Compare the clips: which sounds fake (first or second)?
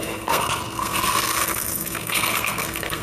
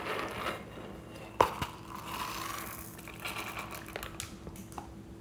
first